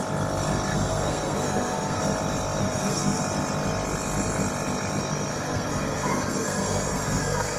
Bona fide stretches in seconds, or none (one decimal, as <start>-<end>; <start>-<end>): 0.0-0.7; 2.0-2.6; 3.2-5.3